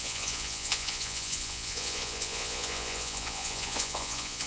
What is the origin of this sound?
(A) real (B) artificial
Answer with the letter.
B